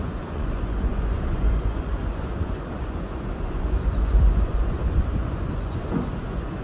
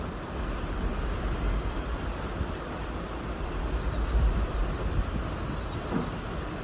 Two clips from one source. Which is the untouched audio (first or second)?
second